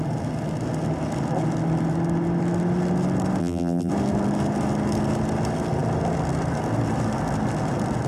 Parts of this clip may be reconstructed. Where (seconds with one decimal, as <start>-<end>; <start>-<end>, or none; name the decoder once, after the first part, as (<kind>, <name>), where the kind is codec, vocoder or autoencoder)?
3.4-3.9 (vocoder, BigVGAN v2)